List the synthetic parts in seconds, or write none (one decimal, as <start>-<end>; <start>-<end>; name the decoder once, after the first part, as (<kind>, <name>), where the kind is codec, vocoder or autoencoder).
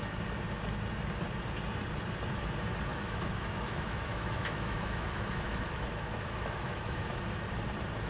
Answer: 2.9-7.2 (autoencoder, DAC-VAE)